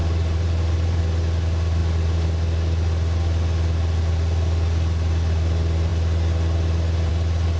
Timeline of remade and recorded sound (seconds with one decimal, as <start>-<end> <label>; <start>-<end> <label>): 0.0-1.0 remade; 1.0-7.6 recorded